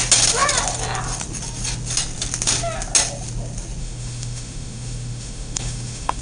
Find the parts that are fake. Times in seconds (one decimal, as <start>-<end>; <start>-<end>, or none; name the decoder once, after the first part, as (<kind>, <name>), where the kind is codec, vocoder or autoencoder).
3.8-6.2 (autoencoder, DAC-VAE)